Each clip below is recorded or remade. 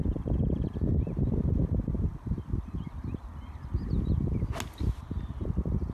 recorded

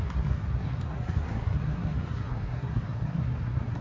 remade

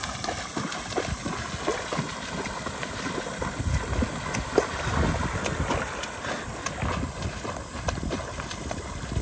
recorded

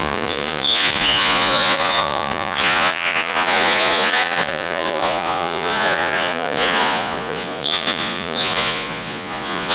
remade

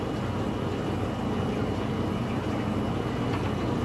recorded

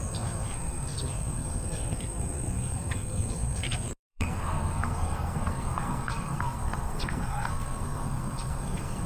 remade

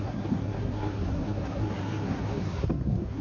remade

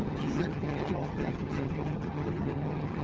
remade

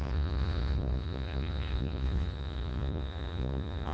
remade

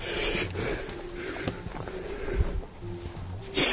recorded